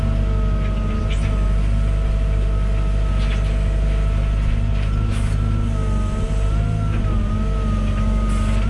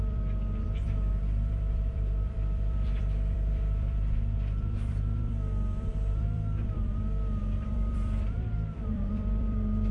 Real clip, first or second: first